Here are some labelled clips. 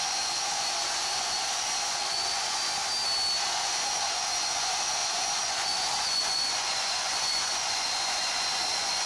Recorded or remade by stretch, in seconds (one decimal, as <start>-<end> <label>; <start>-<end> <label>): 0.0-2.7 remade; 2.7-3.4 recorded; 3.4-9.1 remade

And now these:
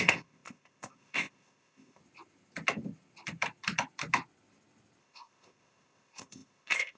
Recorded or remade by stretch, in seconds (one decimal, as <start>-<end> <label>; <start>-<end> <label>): 0.0-2.0 remade; 2.0-5.0 recorded; 5.0-7.0 remade

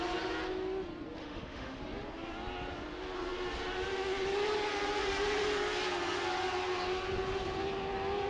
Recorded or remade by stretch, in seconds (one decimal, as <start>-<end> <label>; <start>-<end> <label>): 0.0-1.2 recorded; 1.2-1.8 remade; 1.8-8.3 recorded

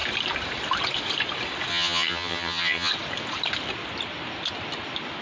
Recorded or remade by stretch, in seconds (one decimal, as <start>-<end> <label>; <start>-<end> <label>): 0.0-1.7 recorded; 1.7-2.9 remade; 2.9-5.2 recorded

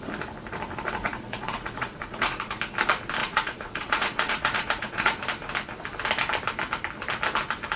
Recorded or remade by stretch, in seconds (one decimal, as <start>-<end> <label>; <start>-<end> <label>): 0.0-1.0 recorded; 1.0-2.6 remade; 2.6-3.2 recorded; 3.2-5.2 remade; 5.2-7.8 recorded

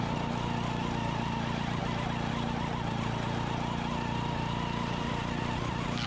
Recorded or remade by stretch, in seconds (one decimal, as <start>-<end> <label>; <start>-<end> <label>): 0.0-6.1 recorded

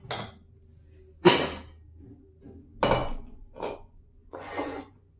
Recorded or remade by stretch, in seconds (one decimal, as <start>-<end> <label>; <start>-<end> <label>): 0.0-3.0 recorded; 3.0-5.2 remade

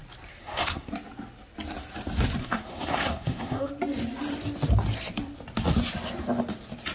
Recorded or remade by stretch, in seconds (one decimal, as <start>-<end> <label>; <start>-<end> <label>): 0.0-0.4 recorded; 0.4-0.9 remade; 0.9-2.4 recorded; 2.4-3.7 remade; 3.7-6.9 recorded